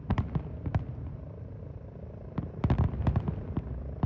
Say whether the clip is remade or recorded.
recorded